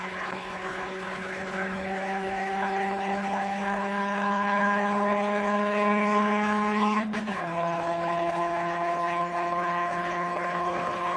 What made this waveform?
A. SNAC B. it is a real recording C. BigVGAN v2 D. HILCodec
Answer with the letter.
D